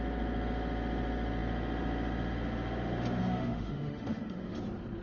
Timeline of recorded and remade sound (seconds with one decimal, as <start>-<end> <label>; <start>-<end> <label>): 0.0-3.2 recorded; 3.2-4.6 remade; 4.6-5.0 recorded